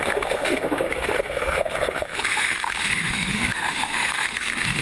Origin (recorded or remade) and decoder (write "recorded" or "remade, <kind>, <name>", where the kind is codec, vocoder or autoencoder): remade, autoencoder, DAC-VAE